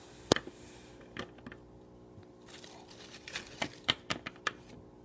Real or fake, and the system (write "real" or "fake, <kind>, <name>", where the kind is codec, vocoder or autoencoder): real